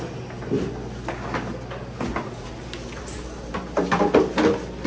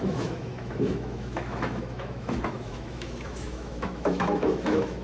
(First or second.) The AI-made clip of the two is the second